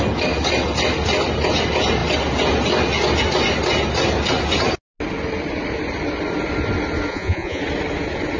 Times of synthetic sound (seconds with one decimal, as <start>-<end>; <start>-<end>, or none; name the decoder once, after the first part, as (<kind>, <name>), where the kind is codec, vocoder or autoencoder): 7.1-7.6 (vocoder, Vocos)